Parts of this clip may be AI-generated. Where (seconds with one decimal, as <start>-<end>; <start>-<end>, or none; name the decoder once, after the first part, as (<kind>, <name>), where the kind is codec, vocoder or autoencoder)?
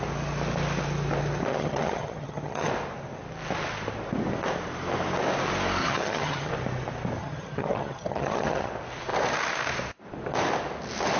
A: 1.5-2.7 (vocoder, HiFi-GAN); 5.8-6.5; 7.2-8.7